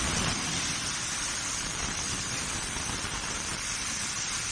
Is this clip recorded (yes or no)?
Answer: no